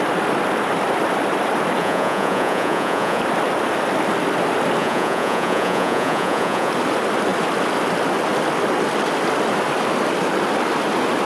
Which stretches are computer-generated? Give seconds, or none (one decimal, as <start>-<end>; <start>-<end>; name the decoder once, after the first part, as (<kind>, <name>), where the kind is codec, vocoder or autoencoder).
1.8-3.2 (vocoder, Vocos); 4.8-6.7